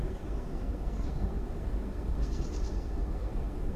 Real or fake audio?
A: fake